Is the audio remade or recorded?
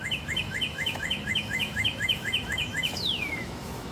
remade